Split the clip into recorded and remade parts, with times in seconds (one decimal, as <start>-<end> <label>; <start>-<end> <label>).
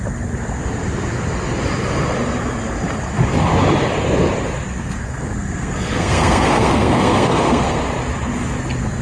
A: 0.0-4.8 recorded; 4.8-7.8 remade; 7.8-9.0 recorded